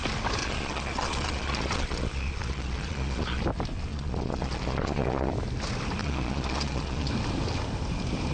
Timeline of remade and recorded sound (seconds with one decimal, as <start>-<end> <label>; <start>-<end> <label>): 0.0-0.4 recorded; 0.4-3.4 remade; 3.4-3.9 recorded; 3.9-5.3 remade; 5.3-6.0 recorded; 6.0-7.1 remade; 7.1-8.3 recorded